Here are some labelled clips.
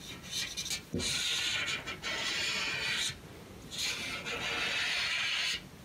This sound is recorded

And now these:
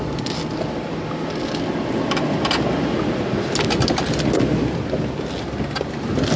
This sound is recorded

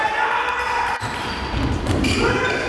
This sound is recorded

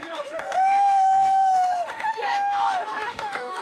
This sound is remade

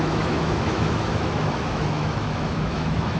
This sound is remade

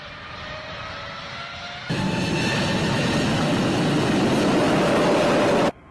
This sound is recorded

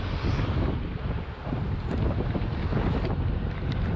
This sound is recorded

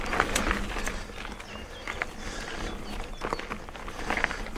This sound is recorded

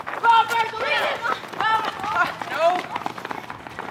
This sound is recorded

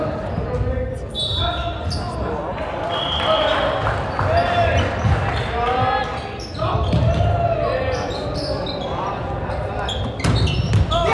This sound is recorded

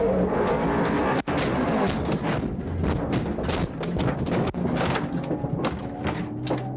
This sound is recorded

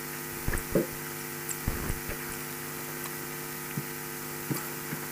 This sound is recorded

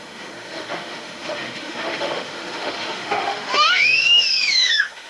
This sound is remade